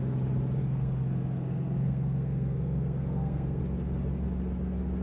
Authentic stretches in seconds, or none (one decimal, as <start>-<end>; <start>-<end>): 0.0-0.6; 3.6-5.0